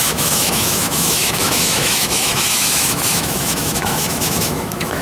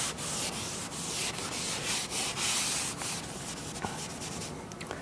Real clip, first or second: second